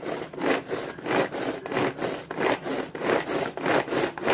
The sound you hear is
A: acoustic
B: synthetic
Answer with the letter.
A